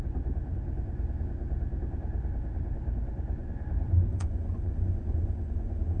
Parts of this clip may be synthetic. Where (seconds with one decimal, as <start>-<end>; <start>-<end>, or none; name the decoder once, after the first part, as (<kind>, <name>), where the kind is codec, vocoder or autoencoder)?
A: 4.1-6.0 (vocoder, Vocos)